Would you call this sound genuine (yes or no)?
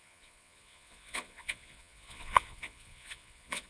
no